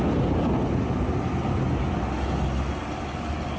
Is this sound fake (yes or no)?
no